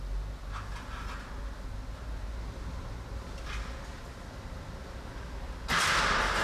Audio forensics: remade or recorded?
recorded